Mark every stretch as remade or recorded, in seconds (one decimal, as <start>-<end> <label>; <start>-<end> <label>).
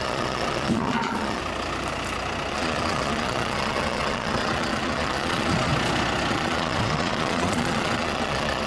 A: 0.0-1.4 remade; 1.4-2.5 recorded; 2.5-5.7 remade; 5.7-6.3 recorded; 6.3-8.7 remade